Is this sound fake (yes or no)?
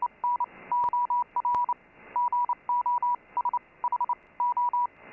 no